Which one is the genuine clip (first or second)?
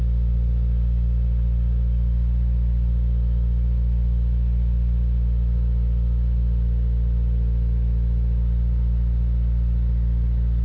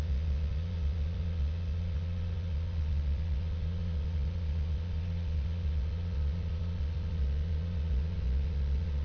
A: first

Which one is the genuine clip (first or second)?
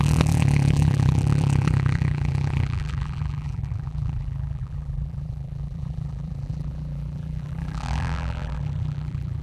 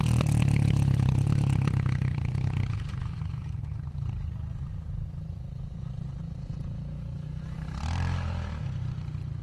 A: second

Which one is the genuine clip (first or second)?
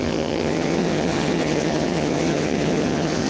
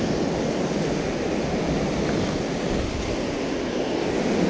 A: second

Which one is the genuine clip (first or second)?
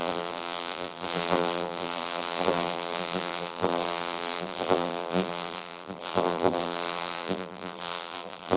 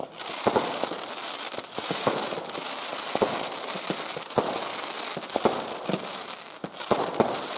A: second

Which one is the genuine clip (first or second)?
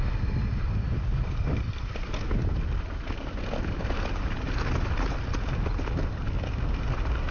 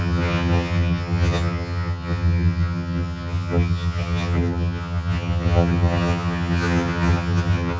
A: first